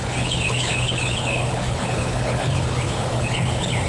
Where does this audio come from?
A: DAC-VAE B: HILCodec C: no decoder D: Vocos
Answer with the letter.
B